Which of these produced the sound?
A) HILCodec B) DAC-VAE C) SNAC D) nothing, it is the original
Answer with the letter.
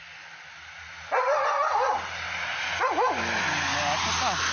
D